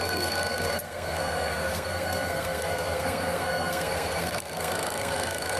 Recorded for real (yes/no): no